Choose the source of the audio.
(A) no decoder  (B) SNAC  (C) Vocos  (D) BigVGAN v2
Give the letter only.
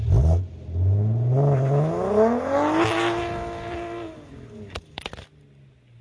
A